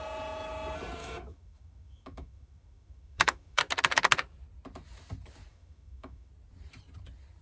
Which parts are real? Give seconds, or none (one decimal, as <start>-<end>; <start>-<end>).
0.0-1.0; 3.6-5.5; 6.3-7.4

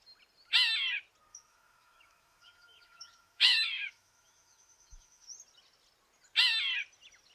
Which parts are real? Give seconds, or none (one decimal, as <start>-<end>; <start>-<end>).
0.0-1.3; 5.3-7.3

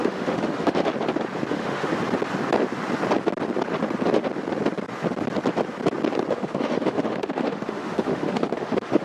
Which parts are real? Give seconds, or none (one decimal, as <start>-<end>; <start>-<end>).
0.9-1.5; 1.9-6.3

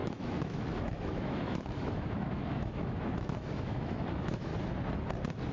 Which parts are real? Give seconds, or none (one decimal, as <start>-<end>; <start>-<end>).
4.5-5.5

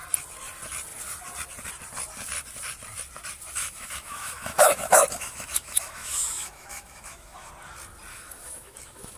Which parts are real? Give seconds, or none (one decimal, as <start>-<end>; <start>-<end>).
0.0-3.6; 7.5-8.1

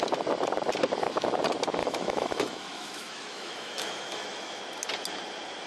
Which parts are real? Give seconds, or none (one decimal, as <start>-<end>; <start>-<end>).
0.0-1.8; 4.6-5.7

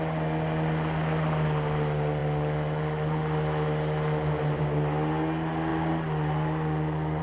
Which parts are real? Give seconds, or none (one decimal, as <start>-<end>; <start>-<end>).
0.0-7.2

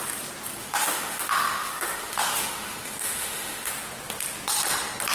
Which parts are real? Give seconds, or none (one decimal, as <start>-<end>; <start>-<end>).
0.0-0.6; 3.7-5.1